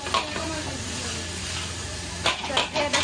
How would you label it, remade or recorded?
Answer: recorded